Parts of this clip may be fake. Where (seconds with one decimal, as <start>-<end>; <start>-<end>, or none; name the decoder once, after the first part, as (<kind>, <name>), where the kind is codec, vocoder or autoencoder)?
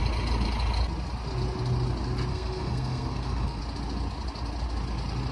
2.3-3.6 (codec, SNAC)